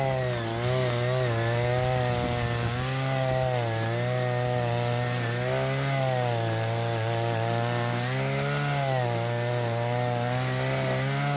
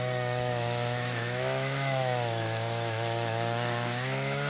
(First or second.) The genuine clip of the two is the first